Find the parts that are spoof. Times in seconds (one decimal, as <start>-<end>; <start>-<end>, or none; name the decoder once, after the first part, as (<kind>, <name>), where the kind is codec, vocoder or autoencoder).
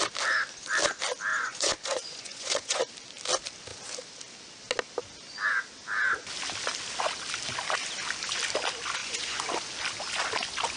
1.3-2.9 (vocoder, Vocos); 9.0-9.5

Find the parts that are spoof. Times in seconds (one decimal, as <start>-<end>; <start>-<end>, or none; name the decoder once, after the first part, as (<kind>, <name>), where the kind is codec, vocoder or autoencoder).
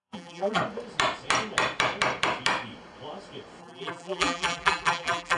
0.0-0.6 (vocoder, BigVGAN v2); 3.6-5.4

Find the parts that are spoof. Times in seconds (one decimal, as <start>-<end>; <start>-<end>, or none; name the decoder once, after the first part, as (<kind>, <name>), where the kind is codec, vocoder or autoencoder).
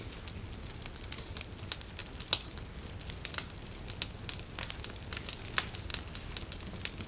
none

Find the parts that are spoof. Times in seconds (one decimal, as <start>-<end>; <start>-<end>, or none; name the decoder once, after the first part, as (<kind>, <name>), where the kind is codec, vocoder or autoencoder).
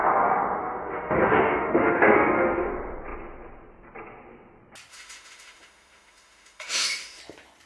0.0-2.7 (autoencoder, DAC-VAE); 4.9-7.2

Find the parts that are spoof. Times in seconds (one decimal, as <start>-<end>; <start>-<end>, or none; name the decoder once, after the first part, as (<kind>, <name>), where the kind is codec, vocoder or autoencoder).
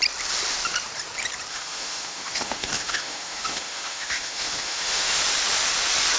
1.5-5.2 (autoencoder, DAC-VAE)